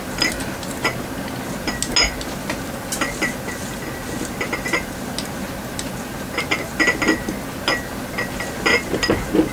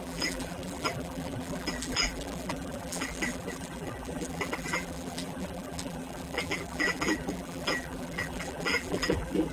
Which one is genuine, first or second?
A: first